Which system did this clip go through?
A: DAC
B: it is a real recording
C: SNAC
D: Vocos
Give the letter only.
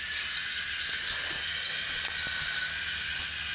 B